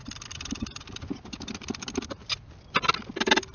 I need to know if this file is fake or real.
real